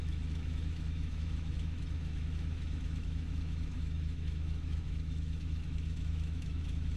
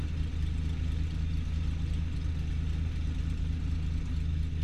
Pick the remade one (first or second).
first